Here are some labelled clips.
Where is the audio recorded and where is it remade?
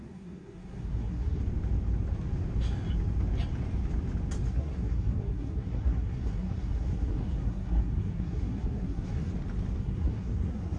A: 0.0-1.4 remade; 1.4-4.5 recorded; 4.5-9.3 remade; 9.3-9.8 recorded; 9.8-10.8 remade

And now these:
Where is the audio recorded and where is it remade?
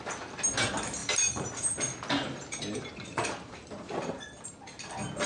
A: 0.0-1.0 recorded; 1.0-4.2 remade; 4.2-5.3 recorded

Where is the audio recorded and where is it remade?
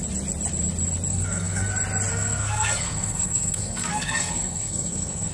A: 0.0-1.1 recorded; 1.1-1.7 remade; 1.7-2.1 recorded; 2.1-5.3 remade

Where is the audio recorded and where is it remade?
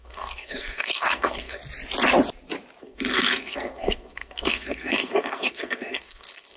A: 0.0-1.6 remade; 1.6-2.8 recorded; 2.8-6.6 remade